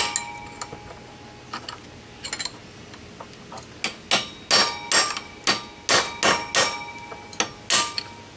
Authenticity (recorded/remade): recorded